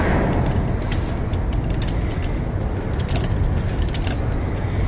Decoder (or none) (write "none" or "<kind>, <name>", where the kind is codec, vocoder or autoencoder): none